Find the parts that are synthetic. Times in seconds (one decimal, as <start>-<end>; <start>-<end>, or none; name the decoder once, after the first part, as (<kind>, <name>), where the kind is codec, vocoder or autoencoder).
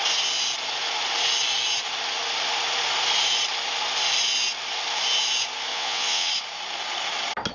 5.7-6.3 (vocoder, WaveNeXt)